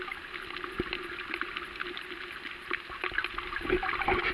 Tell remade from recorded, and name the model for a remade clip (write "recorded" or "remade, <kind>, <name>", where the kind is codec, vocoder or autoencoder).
recorded